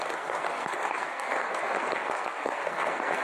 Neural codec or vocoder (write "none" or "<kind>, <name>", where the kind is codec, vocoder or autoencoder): codec, SNAC